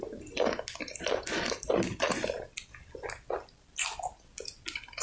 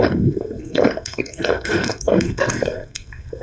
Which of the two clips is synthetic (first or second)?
second